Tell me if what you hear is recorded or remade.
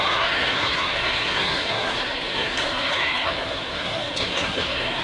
remade